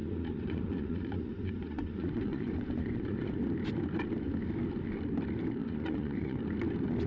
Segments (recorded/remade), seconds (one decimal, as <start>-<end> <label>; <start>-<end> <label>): 0.0-3.4 remade; 3.4-5.6 recorded; 5.6-6.4 remade; 6.4-7.1 recorded